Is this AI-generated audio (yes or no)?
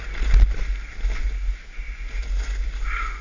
no